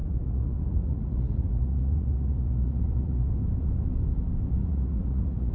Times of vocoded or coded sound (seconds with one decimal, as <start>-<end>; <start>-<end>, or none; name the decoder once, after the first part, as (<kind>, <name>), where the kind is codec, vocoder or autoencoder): 0.0-3.3 (vocoder, Vocos); 4.6-5.5